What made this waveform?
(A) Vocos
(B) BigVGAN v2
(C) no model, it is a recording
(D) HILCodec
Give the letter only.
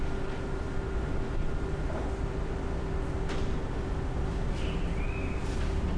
C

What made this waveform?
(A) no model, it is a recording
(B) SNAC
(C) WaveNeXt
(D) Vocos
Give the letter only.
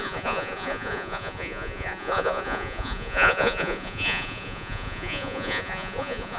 D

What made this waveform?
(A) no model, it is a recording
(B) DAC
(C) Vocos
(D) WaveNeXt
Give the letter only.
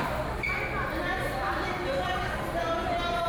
A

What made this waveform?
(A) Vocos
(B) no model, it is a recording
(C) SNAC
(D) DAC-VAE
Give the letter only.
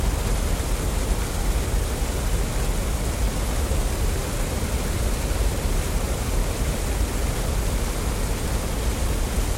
B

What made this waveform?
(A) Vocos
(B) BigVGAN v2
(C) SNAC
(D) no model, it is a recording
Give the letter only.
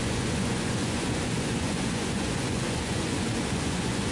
A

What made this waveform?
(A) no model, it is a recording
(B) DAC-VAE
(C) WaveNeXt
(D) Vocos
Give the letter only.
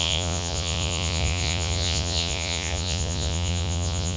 D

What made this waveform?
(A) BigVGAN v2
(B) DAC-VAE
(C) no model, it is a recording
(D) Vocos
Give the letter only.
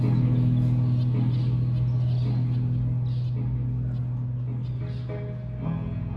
C